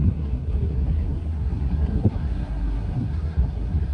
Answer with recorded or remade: remade